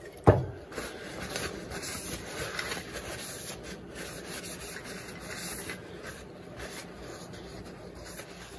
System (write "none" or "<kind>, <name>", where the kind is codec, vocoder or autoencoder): none